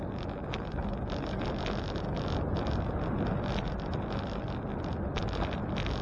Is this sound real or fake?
real